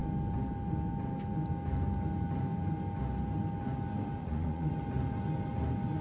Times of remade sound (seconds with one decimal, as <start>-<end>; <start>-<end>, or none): 4.2-4.7